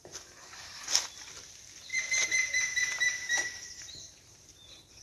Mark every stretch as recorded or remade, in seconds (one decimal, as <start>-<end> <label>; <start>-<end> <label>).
0.0-0.8 remade; 0.8-1.9 recorded; 1.9-5.0 remade